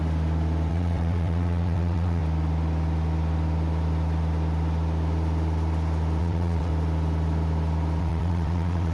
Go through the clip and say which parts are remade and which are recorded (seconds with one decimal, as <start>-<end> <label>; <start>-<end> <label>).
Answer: 0.0-0.7 recorded; 0.7-2.2 remade; 2.2-6.2 recorded; 6.2-6.7 remade; 6.7-8.0 recorded; 8.0-8.9 remade